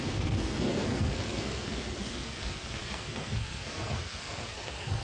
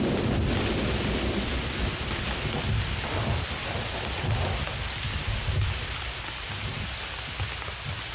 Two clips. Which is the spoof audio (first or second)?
first